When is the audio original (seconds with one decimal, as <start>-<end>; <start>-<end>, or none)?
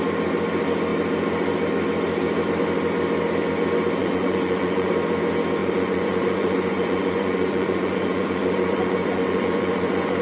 0.0-4.0; 4.9-5.6